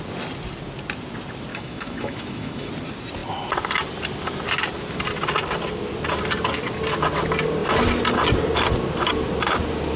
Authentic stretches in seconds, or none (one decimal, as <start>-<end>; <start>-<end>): 0.0-1.5; 2.7-10.0